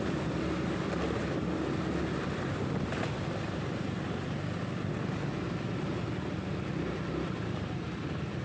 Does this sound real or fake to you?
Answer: real